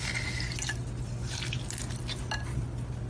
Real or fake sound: real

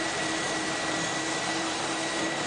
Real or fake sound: fake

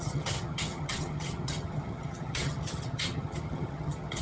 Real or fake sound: fake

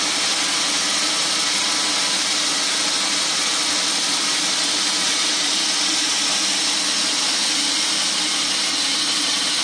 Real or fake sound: real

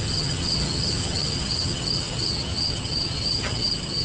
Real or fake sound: fake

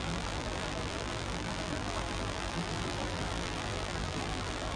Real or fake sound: fake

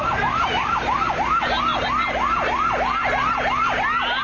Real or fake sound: real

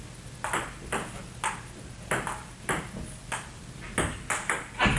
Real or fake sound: real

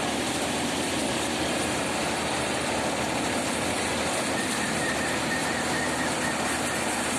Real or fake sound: real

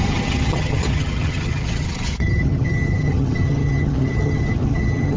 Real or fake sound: fake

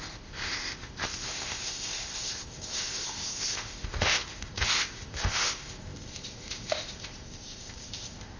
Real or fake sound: fake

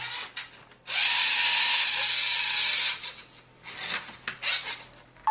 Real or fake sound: real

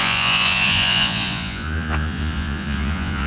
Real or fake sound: fake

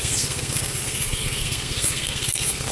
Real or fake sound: fake